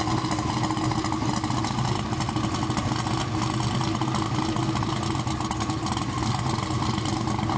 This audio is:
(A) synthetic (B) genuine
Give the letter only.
B